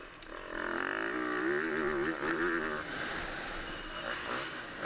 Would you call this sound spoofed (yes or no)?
no